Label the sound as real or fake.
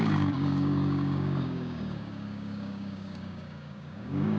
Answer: fake